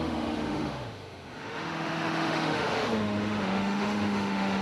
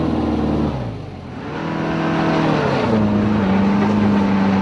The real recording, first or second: second